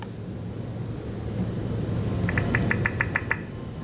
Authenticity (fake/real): real